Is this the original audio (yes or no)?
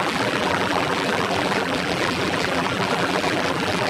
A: no